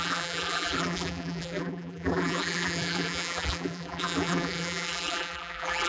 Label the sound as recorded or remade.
remade